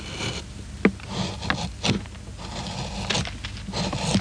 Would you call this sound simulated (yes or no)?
no